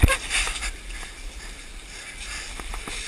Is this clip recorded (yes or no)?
yes